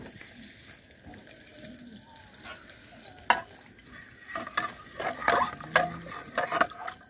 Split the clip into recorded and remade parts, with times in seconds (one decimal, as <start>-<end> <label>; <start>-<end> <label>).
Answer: 0.0-7.1 recorded